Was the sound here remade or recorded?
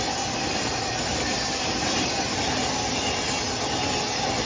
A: recorded